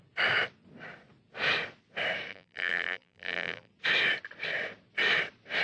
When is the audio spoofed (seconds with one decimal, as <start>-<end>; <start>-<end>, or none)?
2.3-3.7